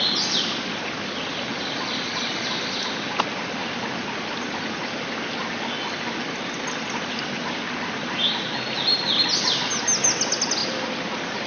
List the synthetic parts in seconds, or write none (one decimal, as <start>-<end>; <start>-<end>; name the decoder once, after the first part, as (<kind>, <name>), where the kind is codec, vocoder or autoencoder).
none